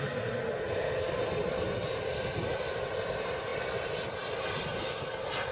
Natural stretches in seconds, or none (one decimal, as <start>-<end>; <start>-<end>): 0.0-5.5